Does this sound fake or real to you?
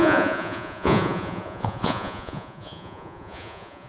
fake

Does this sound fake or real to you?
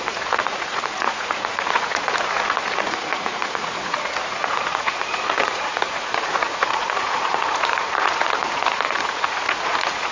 fake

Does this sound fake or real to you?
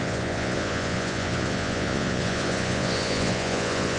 fake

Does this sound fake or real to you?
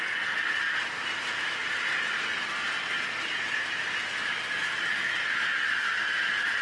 real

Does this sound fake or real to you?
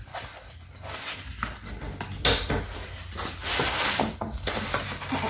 real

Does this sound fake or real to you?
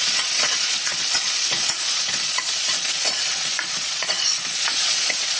fake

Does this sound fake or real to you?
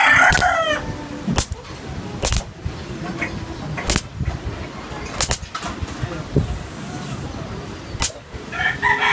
real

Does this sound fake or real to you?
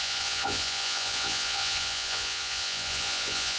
fake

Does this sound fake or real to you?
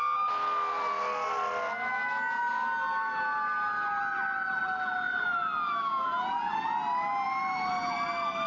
real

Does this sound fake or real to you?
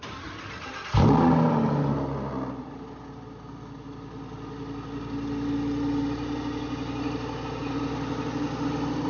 real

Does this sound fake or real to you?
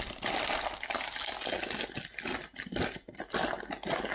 real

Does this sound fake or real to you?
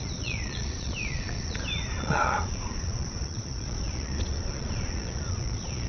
fake